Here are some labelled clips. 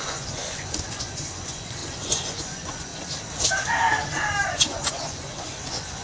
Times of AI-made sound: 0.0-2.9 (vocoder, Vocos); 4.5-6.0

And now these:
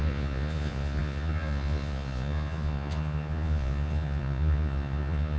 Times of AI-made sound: 0.0-5.4 (vocoder, Vocos)

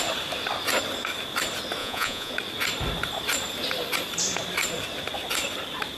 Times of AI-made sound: 1.8-2.3 (vocoder, Vocos)